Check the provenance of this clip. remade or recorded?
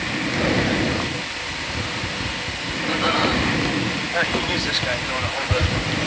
recorded